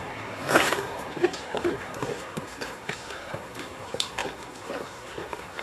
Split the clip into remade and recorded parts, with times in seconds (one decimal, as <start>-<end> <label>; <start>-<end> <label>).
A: 0.0-5.6 remade